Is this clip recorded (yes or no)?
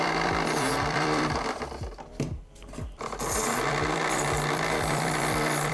no